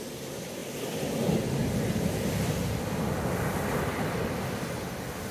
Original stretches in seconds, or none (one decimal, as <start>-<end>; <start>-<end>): 0.0-5.3